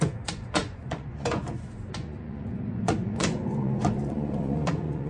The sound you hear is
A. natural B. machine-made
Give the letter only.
B